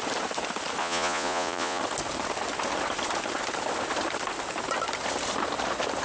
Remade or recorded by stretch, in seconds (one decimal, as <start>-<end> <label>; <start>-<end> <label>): 0.0-0.8 recorded; 0.8-1.8 remade; 1.8-6.0 recorded